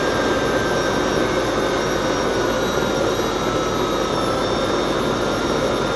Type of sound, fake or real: real